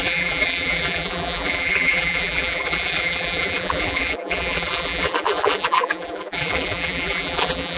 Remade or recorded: remade